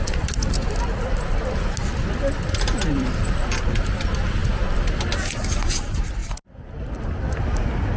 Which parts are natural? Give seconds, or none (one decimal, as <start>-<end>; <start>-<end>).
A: 0.0-8.0